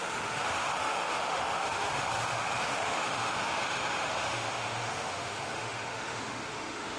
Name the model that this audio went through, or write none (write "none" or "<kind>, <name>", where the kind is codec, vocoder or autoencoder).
autoencoder, DAC-VAE